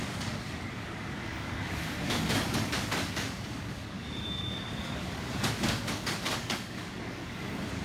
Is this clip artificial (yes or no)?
yes